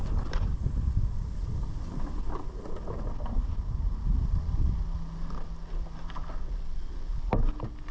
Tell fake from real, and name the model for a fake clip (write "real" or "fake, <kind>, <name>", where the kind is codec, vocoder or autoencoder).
real